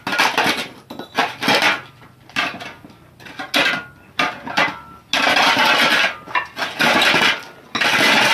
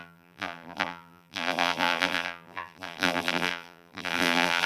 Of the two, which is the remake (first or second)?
second